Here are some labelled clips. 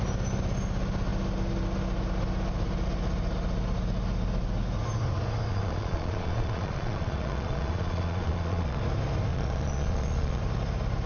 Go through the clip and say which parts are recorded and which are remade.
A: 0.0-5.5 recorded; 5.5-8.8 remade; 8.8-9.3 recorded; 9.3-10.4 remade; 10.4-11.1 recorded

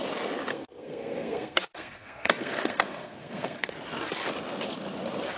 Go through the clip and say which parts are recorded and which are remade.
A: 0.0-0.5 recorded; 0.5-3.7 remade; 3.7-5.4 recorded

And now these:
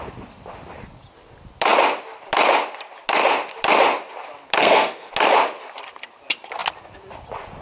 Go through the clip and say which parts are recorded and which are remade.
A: 0.0-4.6 recorded; 4.6-5.1 remade; 5.1-7.6 recorded

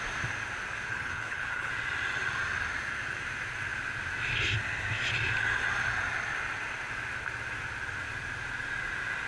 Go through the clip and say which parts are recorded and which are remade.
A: 0.0-0.9 recorded; 0.9-1.7 remade; 1.7-9.3 recorded

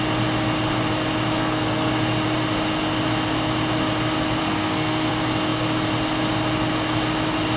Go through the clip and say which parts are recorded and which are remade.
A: 0.0-1.4 recorded; 1.4-1.9 remade; 1.9-4.4 recorded; 4.4-5.1 remade; 5.1-7.6 recorded